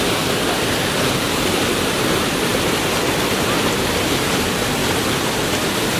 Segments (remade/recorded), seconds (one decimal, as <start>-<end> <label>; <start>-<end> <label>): 0.0-6.0 recorded